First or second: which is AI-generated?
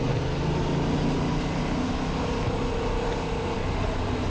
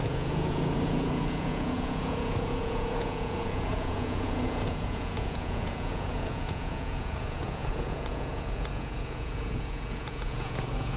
second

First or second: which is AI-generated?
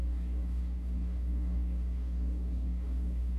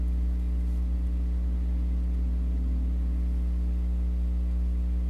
first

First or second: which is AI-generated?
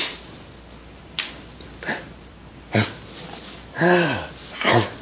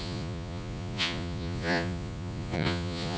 second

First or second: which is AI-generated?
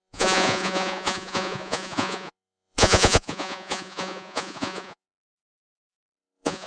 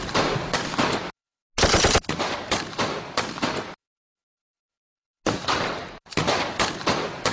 first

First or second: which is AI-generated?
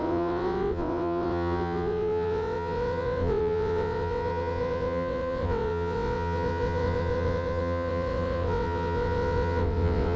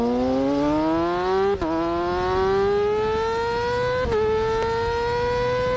first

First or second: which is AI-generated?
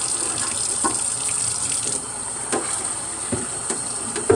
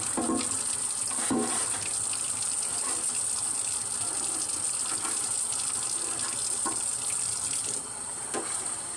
first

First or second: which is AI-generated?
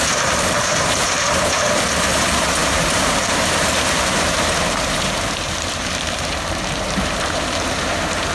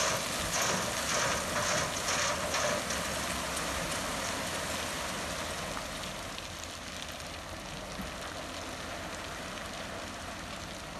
first